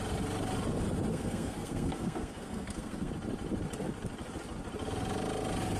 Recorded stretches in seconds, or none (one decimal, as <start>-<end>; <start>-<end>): 0.0-1.1; 3.1-5.8